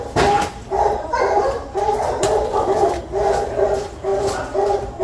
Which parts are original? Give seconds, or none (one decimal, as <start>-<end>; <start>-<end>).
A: 3.0-3.5